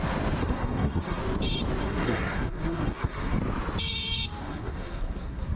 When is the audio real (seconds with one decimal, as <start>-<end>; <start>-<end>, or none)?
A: 0.0-0.4; 1.2-1.8; 3.4-4.4